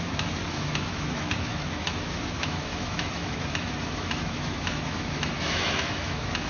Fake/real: fake